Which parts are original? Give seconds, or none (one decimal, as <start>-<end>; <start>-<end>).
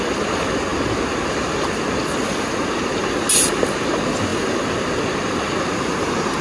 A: 0.0-6.4